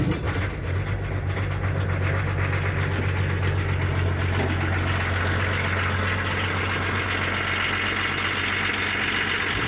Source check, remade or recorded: recorded